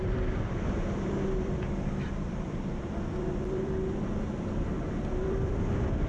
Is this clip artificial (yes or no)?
yes